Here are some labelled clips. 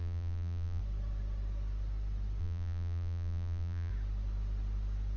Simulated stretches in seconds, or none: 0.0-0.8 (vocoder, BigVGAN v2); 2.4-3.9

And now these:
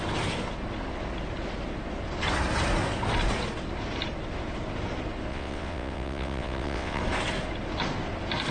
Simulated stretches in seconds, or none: 5.3-7.0 (vocoder, WaveNeXt)

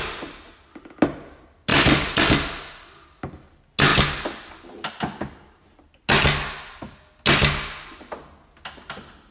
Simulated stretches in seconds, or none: 1.7-2.2 (vocoder, BigVGAN v2)

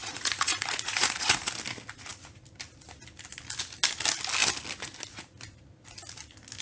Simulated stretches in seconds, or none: 0.0-1.5 (vocoder, Vocos)